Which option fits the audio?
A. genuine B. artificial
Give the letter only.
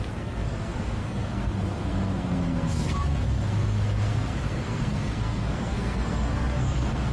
B